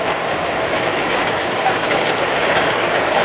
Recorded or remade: remade